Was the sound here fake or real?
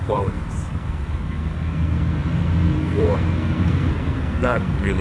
fake